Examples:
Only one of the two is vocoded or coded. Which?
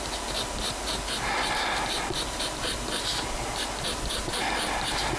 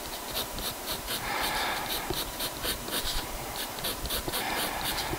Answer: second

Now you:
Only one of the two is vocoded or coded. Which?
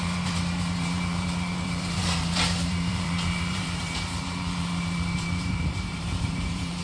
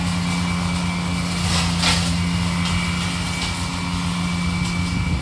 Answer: first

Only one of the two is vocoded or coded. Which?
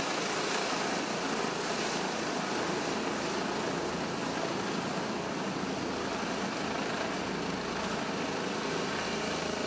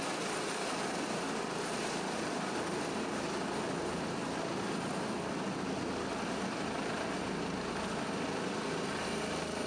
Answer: second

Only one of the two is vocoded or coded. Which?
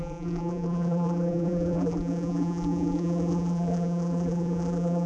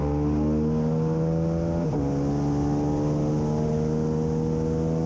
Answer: first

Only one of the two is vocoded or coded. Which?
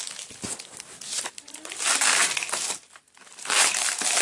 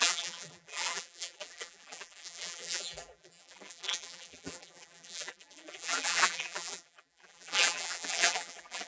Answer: second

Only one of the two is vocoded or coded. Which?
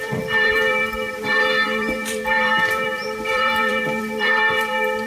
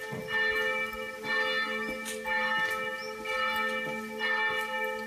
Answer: first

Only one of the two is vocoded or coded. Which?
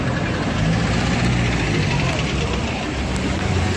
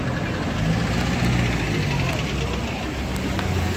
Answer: first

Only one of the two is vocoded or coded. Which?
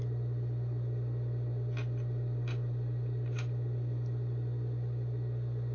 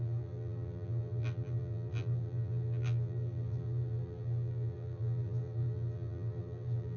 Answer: second